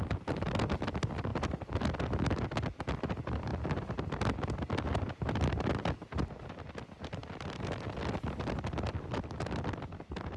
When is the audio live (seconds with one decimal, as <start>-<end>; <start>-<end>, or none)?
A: 1.3-3.0; 3.5-4.9; 7.2-8.0